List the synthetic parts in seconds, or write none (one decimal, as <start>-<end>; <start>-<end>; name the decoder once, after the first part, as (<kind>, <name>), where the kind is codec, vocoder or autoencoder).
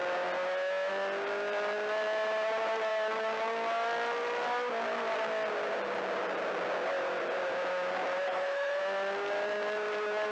8.3-8.8 (codec, HILCodec)